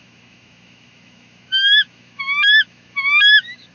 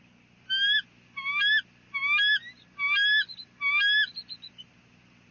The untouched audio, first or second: second